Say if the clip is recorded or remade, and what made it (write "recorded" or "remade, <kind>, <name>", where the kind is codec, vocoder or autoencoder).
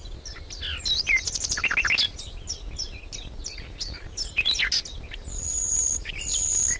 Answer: recorded